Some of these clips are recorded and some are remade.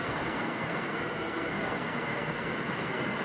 remade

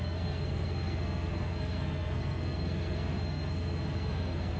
remade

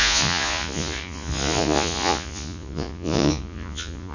remade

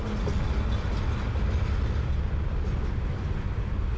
recorded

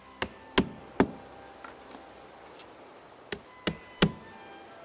recorded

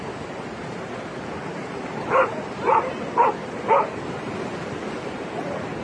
recorded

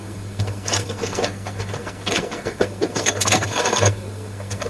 remade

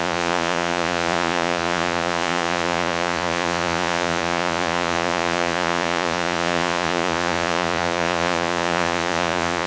remade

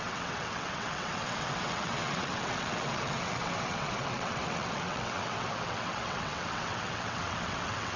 remade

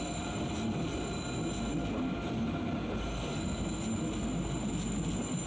recorded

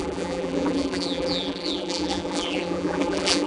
remade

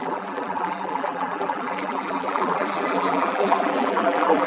remade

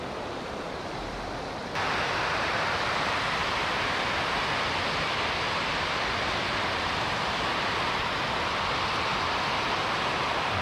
recorded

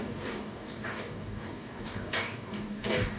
remade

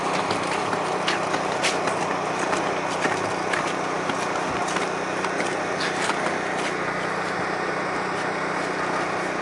recorded